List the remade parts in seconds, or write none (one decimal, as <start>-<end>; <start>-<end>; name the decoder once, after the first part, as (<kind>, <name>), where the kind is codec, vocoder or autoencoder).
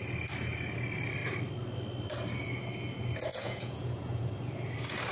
3.3-4.3 (vocoder, Vocos)